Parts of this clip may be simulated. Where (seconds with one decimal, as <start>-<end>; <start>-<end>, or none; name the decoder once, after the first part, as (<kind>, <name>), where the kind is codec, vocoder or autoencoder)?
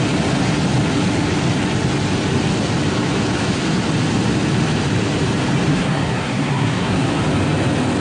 5.7-7.1 (codec, SNAC)